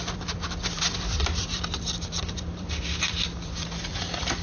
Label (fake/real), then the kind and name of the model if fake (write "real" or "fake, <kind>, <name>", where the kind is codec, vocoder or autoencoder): fake, vocoder, BigVGAN v2